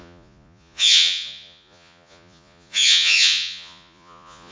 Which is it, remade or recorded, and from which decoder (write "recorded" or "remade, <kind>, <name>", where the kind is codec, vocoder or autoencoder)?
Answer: remade, vocoder, Vocos